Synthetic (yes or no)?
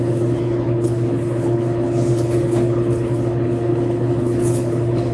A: yes